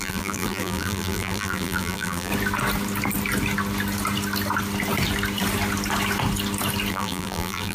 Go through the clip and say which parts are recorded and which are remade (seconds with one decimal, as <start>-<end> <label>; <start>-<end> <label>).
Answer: 0.0-2.3 remade; 2.3-6.9 recorded; 6.9-7.7 remade